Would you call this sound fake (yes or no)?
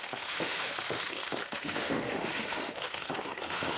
yes